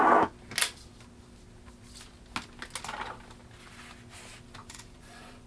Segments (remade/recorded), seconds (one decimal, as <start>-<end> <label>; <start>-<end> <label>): 0.0-4.6 recorded; 4.6-5.5 remade